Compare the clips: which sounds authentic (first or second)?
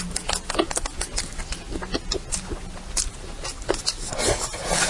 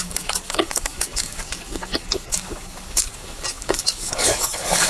first